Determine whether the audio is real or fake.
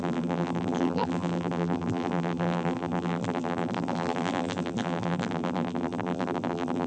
fake